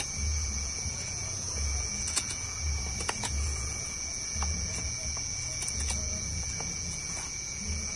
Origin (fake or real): fake